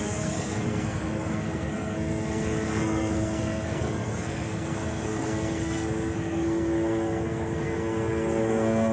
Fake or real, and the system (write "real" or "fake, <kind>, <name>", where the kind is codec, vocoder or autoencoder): fake, codec, SNAC